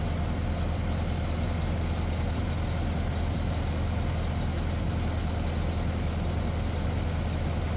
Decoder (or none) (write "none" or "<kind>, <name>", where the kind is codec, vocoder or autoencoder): none